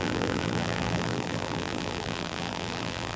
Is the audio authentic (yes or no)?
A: no